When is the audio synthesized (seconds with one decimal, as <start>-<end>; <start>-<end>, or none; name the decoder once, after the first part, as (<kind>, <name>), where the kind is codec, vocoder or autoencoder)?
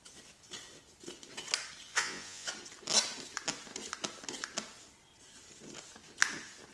1.9-2.5 (vocoder, Vocos)